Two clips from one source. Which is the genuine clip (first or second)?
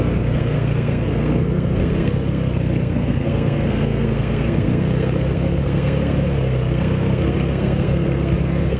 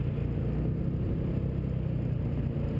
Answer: second